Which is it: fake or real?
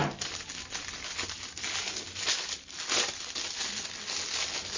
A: real